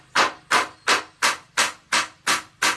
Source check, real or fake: real